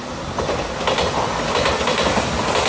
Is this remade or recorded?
recorded